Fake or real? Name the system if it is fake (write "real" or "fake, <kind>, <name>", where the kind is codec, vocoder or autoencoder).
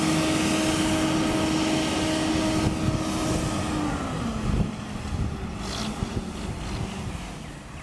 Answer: real